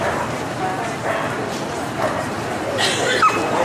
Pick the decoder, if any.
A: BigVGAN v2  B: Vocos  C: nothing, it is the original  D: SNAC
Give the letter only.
C